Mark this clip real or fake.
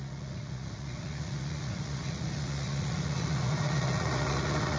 fake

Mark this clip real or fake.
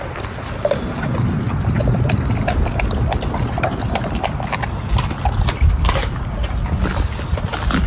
real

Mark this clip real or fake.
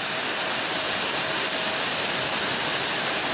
real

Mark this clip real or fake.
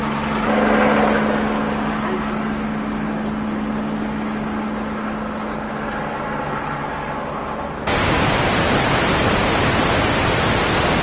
real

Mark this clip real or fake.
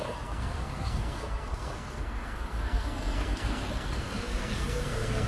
fake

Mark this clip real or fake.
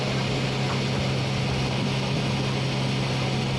real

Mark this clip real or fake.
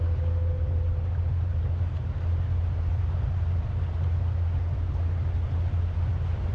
real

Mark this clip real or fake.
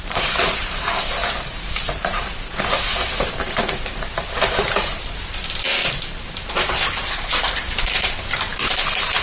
fake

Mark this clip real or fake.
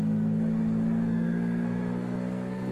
fake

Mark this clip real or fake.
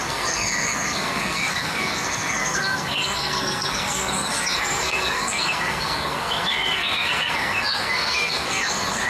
fake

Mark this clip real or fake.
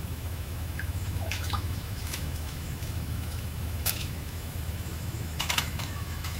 fake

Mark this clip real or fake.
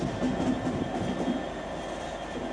real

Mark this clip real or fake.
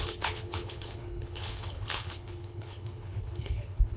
fake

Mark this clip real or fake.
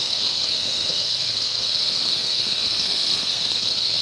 fake